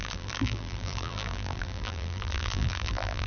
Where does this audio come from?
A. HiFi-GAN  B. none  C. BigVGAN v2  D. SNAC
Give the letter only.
C